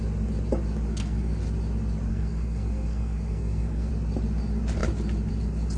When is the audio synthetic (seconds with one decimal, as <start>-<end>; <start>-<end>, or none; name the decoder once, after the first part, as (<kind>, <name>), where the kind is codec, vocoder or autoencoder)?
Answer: 0.9-1.4 (codec, SNAC); 2.1-3.9